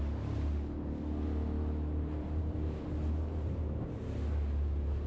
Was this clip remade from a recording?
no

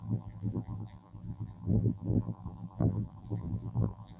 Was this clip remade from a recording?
yes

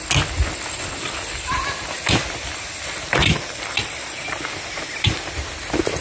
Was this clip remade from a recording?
no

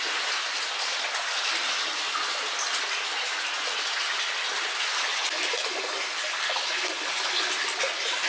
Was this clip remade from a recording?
no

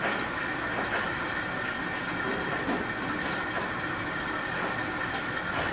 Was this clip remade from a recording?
no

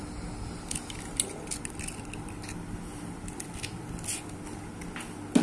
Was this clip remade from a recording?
no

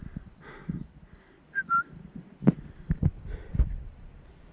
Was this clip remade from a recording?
yes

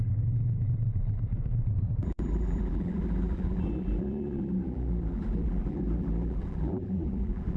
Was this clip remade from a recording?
yes